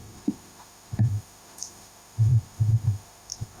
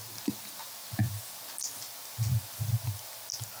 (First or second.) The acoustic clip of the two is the second